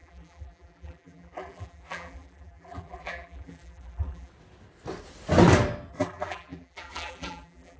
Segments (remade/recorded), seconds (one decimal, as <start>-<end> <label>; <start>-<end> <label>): 0.0-4.3 remade; 4.3-5.9 recorded; 5.9-7.8 remade